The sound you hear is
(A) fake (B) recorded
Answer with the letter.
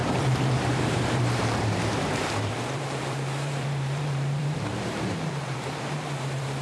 A